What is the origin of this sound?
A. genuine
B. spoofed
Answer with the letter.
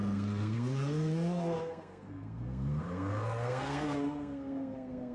B